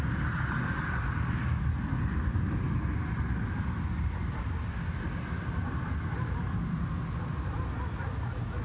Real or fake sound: real